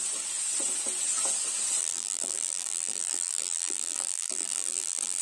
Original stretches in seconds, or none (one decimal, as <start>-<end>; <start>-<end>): 0.0-1.8